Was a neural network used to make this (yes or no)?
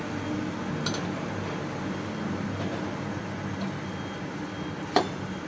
no